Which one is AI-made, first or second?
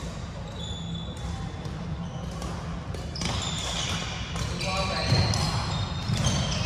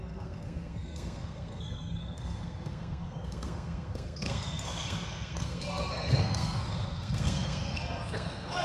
second